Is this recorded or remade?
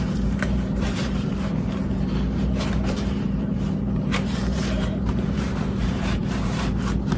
remade